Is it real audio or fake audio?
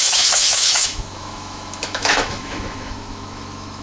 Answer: fake